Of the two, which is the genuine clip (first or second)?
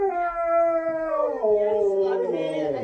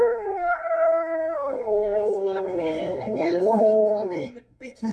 first